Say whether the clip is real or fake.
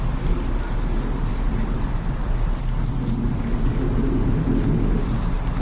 real